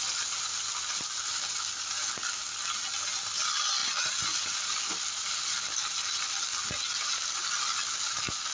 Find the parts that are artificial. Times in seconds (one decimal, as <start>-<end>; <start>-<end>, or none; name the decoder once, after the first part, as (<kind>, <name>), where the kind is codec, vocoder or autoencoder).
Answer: none